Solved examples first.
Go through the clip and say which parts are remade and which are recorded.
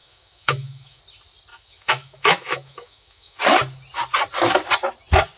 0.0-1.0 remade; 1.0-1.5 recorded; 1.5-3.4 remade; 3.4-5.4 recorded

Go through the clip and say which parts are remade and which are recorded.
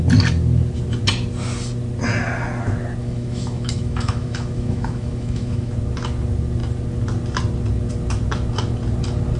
0.0-3.0 recorded; 3.0-5.7 remade; 5.7-9.4 recorded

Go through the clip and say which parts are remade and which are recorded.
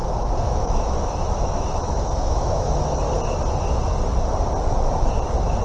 0.0-3.0 remade; 3.0-5.6 recorded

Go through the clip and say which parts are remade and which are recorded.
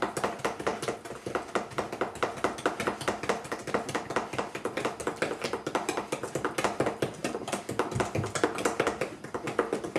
0.0-10.0 recorded